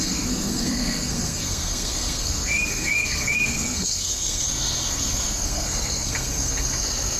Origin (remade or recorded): remade